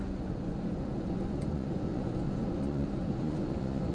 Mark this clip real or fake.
fake